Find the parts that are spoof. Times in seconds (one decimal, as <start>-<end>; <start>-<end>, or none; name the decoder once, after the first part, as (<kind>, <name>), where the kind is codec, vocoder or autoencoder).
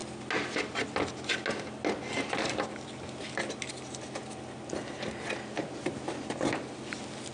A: none